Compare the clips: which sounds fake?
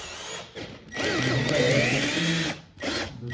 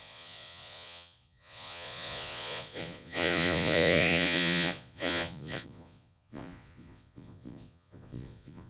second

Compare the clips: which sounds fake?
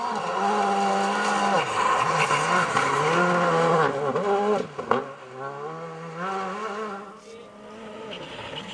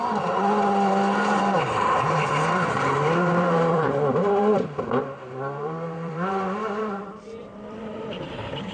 second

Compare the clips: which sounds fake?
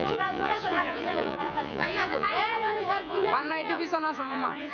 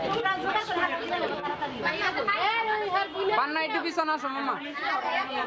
first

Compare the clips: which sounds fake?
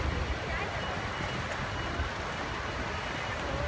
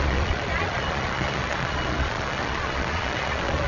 second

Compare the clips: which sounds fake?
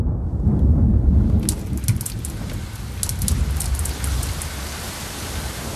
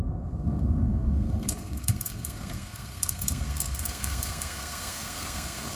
second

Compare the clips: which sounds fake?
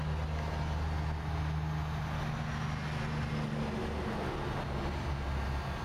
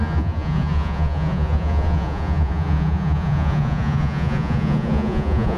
second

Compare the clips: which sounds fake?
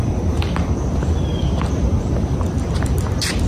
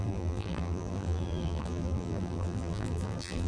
second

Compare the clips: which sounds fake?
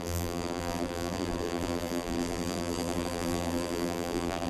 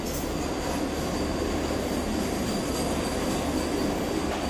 first